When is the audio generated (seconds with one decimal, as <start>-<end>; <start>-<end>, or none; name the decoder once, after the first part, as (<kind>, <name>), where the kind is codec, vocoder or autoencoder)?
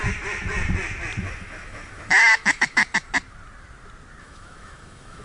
1.2-2.8 (autoencoder, DAC-VAE); 4.2-5.2